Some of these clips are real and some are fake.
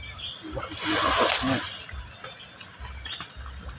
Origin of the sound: real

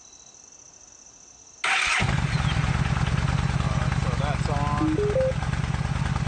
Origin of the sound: real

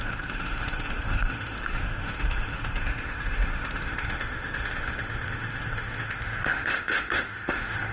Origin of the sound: fake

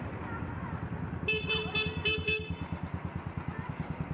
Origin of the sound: real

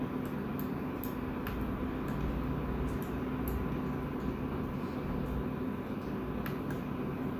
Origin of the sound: real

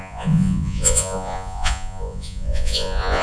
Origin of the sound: fake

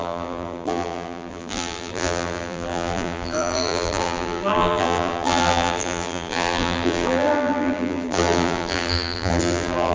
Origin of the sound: fake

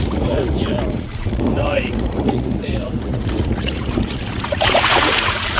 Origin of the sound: fake